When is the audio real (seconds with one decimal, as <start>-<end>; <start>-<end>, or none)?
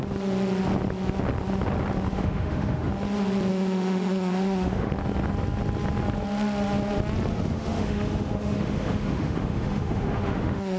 0.0-2.1; 2.9-3.5; 4.9-7.3